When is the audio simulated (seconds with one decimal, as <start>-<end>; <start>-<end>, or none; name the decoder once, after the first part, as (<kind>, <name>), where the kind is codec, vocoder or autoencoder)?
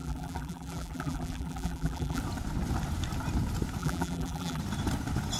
0.0-2.2 (vocoder, BigVGAN v2); 3.8-4.6